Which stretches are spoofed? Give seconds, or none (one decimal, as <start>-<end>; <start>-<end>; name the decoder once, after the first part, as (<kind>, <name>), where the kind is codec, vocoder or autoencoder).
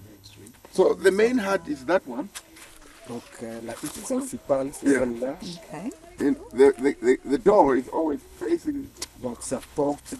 0.0-0.9 (codec, HILCodec); 2.0-2.7; 3.6-5.7; 7.4-10.2